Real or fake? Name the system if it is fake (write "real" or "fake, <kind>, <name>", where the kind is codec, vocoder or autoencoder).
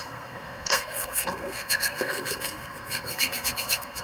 fake, codec, SNAC